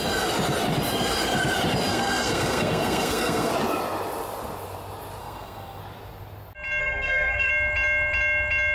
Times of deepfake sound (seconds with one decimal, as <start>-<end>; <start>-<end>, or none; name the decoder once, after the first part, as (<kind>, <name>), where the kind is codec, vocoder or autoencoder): 1.9-3.5 (codec, SNAC); 5.2-5.8; 6.8-7.5